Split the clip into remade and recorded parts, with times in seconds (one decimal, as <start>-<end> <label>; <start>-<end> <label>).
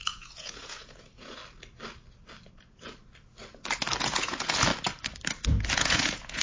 0.0-1.4 remade; 1.4-4.0 recorded; 4.0-4.7 remade; 4.7-5.7 recorded; 5.7-6.4 remade